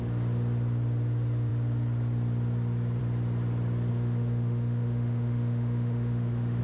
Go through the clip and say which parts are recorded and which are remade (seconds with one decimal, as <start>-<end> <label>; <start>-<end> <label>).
0.0-3.9 recorded; 3.9-6.6 remade